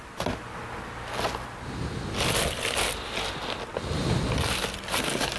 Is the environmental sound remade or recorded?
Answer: recorded